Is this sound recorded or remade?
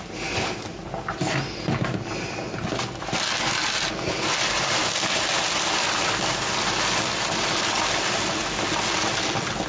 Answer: recorded